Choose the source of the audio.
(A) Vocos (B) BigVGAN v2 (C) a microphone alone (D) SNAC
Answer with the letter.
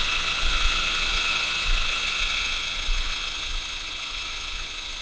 A